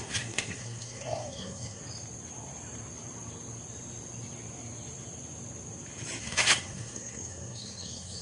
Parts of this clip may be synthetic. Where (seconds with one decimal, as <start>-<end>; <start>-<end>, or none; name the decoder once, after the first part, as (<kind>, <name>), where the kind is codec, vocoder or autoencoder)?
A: 0.0-1.8 (codec, SNAC); 6.2-8.2